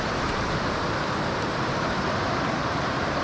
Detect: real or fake fake